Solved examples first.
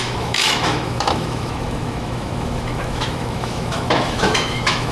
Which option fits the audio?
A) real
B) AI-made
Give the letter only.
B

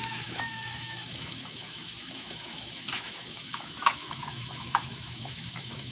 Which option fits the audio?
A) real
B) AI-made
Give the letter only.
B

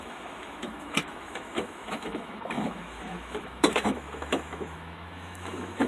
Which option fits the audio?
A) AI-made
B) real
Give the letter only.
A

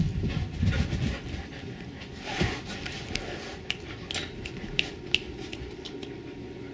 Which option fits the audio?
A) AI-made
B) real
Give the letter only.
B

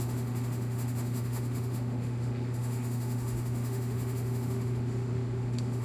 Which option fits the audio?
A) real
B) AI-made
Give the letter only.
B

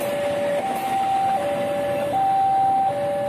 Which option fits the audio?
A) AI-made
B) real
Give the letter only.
B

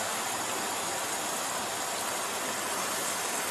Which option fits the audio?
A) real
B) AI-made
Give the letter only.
A